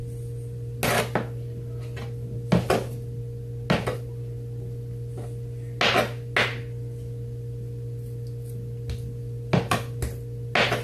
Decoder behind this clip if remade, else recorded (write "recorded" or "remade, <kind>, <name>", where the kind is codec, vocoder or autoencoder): recorded